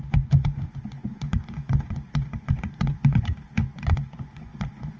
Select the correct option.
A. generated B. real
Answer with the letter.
A